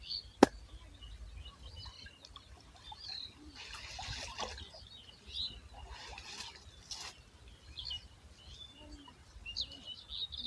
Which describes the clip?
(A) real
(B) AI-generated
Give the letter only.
A